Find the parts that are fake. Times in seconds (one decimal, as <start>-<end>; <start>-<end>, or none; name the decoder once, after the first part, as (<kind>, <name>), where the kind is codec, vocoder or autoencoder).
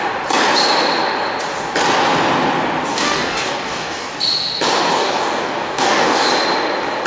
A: 2.9-4.1 (codec, DAC); 5.0-6.3